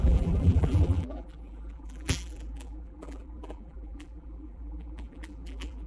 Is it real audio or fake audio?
fake